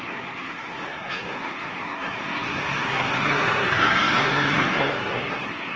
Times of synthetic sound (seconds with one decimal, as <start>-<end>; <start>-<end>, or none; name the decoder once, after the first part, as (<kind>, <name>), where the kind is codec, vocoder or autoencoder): 0.0-5.8 (codec, SNAC)